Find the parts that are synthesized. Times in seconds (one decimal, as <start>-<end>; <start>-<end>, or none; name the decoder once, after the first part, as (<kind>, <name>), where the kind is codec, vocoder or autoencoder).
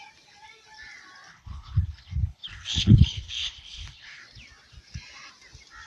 1.3-4.2 (codec, HILCodec)